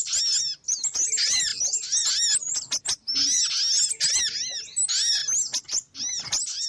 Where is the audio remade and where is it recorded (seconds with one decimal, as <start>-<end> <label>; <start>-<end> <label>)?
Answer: 0.0-6.7 recorded